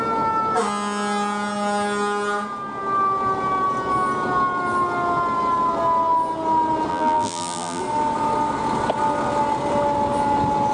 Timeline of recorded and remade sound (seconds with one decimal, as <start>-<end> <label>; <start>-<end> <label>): 0.0-6.9 recorded; 6.9-7.8 remade; 7.8-10.7 recorded